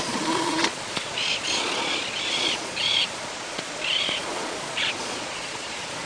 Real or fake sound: fake